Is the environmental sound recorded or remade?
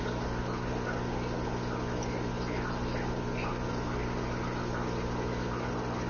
recorded